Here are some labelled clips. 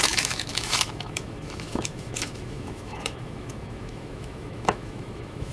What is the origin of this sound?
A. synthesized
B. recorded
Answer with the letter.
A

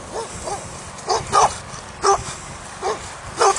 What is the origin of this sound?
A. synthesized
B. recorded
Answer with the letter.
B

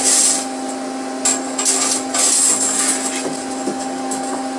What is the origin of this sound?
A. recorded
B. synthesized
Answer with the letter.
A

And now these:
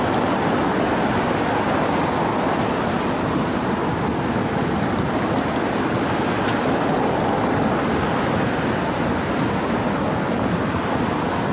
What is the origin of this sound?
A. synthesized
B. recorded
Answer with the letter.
B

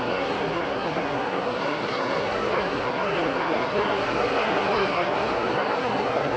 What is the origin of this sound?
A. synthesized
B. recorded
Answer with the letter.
A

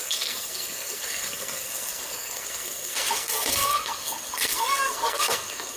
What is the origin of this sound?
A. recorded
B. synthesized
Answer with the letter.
B